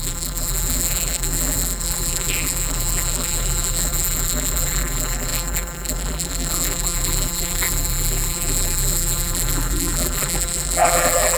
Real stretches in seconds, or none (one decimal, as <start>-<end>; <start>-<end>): none